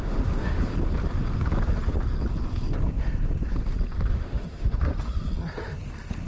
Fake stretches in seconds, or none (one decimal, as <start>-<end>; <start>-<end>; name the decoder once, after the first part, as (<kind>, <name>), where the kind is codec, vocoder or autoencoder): 0.0-0.7 (autoencoder, DAC-VAE); 4.1-4.9